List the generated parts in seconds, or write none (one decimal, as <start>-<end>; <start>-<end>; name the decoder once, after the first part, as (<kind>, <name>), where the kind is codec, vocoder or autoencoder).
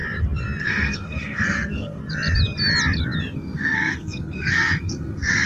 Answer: 0.6-2.0 (codec, SNAC); 3.3-5.5